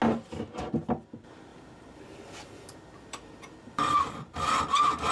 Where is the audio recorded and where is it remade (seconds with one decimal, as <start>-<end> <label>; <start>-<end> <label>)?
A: 0.0-1.5 recorded; 1.5-4.6 remade; 4.6-5.1 recorded